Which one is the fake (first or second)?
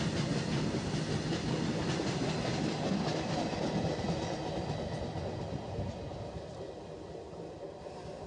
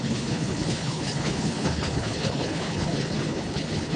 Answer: second